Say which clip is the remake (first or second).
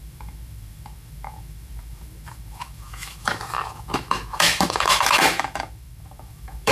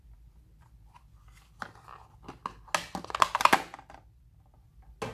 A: first